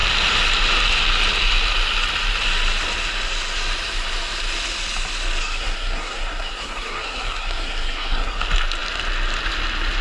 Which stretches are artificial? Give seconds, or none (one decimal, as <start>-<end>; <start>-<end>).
5.4-8.4